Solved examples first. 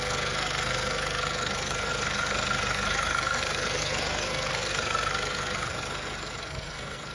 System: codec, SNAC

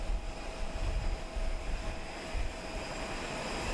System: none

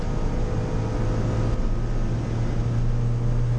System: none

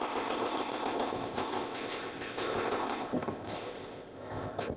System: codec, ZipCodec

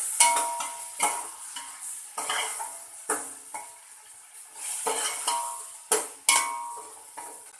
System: none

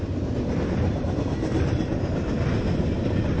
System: none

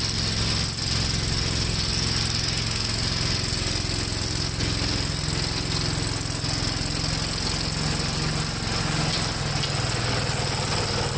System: none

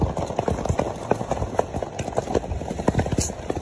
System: none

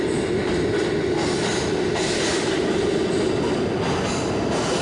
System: none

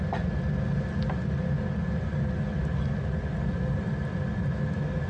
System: none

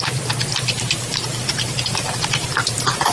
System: vocoder, BigVGAN v2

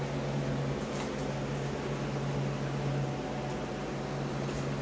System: none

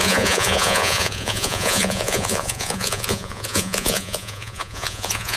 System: vocoder, Vocos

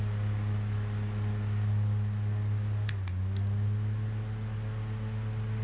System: none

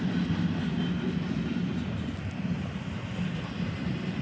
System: none